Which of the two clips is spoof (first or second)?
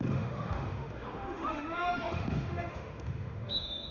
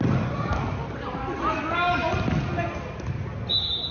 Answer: first